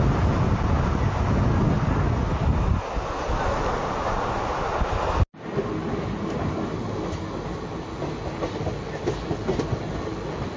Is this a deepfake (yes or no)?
no